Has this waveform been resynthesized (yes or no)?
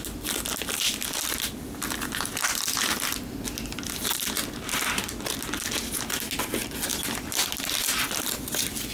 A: no